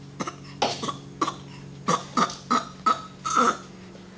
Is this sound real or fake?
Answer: real